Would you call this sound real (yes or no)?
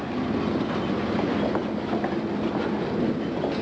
yes